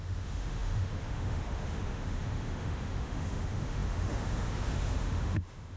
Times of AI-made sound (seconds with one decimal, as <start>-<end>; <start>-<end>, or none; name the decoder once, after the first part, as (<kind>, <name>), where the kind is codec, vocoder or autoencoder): 0.0-5.8 (autoencoder, DAC-VAE)